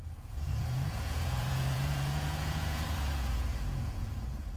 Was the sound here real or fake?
fake